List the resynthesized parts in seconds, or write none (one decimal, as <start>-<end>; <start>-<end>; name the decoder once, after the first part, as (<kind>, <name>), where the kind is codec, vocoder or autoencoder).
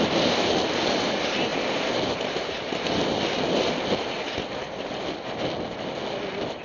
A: none